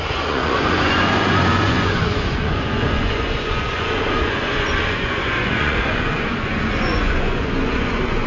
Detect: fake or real fake